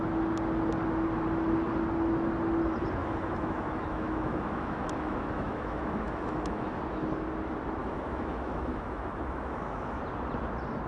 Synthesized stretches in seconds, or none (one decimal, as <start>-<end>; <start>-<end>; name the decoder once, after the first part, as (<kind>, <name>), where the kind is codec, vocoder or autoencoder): 3.0-6.8 (autoencoder, DAC-VAE); 7.8-10.0